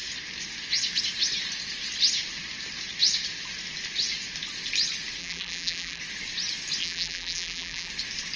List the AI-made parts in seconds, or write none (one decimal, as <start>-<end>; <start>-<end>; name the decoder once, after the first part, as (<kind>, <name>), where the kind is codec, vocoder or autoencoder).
5.2-6.0 (vocoder, BigVGAN v2); 6.8-7.9